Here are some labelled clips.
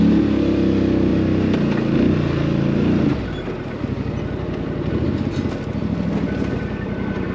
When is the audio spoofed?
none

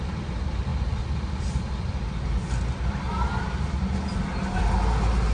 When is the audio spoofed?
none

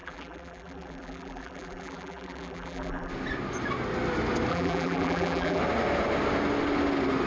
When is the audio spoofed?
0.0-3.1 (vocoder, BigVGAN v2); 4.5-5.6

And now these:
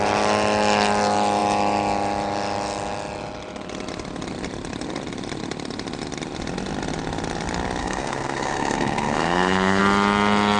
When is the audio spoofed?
7.8-9.8 (codec, SNAC)